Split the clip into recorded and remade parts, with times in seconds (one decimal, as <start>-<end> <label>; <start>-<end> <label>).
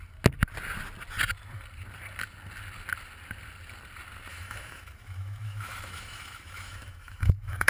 0.0-4.3 recorded; 4.3-7.7 remade